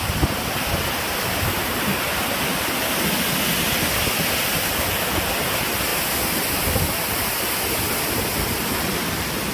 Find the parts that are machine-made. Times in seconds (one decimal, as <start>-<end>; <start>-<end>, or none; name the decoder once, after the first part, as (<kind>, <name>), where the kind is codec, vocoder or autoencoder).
none